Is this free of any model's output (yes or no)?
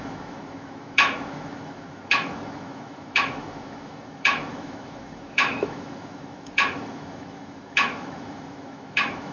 no